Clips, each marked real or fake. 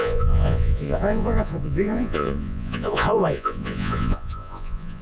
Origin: fake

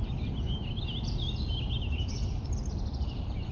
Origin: real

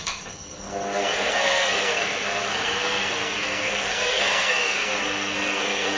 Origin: fake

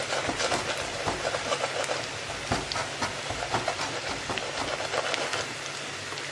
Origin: real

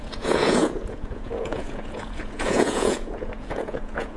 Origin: fake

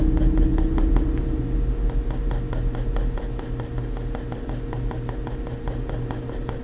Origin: real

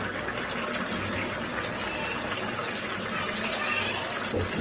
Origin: real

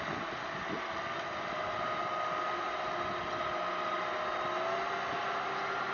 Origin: real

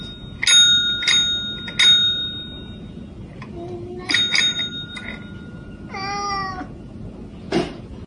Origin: real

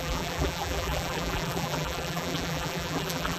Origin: fake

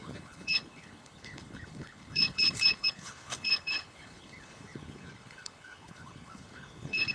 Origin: fake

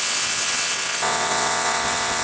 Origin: fake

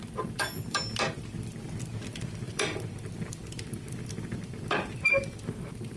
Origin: fake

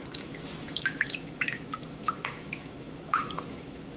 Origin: fake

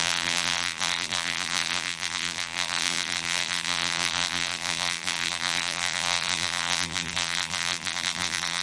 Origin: fake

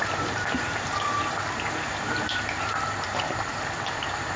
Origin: fake